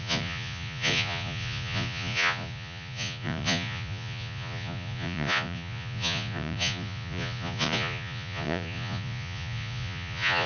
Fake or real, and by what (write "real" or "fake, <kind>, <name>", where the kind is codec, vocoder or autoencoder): fake, vocoder, Vocos